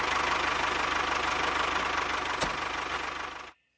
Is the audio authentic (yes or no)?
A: yes